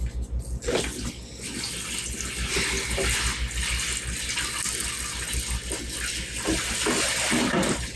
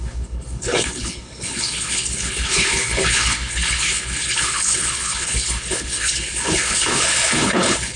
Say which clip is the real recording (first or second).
first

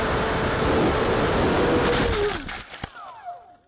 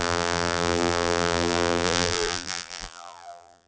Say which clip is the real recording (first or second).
first